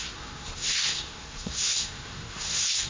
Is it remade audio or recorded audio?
remade